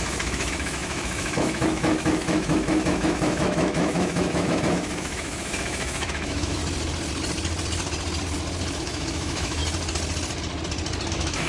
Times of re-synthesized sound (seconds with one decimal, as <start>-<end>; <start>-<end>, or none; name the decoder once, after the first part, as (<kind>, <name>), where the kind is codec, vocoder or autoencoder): 0.0-6.6 (autoencoder, DAC-VAE); 8.8-9.6; 11.1-11.5